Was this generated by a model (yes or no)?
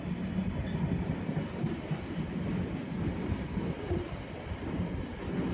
no